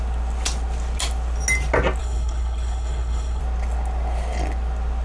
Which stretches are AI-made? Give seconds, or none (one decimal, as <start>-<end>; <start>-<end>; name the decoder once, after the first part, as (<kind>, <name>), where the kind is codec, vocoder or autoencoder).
2.0-3.4 (codec, HILCodec)